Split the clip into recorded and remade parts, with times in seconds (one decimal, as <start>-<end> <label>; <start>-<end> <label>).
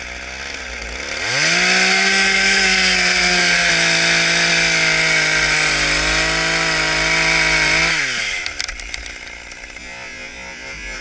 0.0-1.9 recorded; 1.9-3.7 remade; 3.7-11.0 recorded